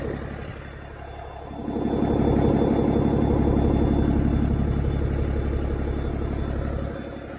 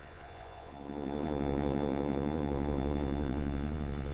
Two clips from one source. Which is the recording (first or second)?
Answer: first